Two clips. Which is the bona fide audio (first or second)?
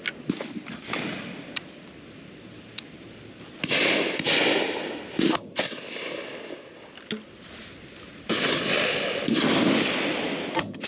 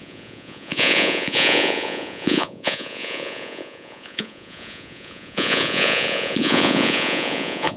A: first